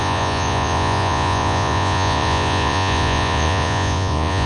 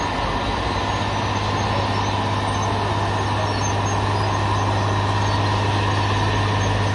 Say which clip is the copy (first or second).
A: first